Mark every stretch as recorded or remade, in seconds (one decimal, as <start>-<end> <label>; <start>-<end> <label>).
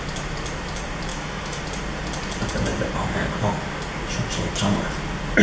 0.0-1.1 recorded; 1.1-1.6 remade; 1.6-5.4 recorded